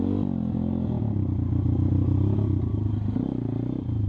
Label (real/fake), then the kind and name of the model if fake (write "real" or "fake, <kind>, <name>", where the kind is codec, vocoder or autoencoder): real